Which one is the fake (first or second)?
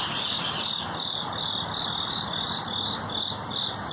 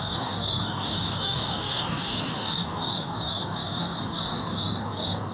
second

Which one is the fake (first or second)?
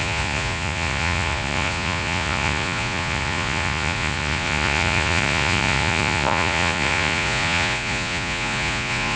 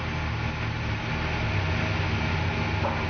first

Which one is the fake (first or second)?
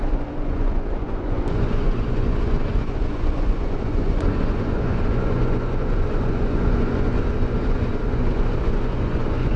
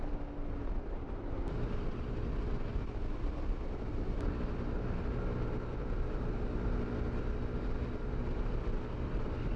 first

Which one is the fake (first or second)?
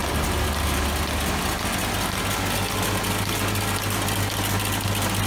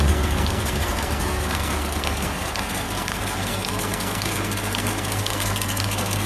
second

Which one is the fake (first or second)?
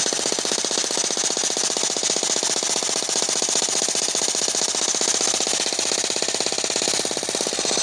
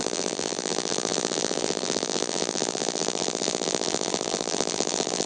second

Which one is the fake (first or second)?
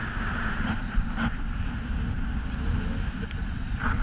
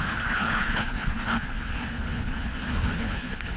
second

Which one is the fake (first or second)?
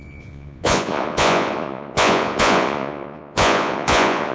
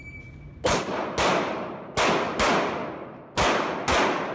first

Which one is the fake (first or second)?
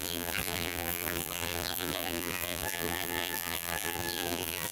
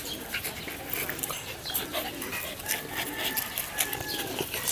first